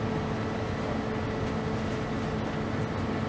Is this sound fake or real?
real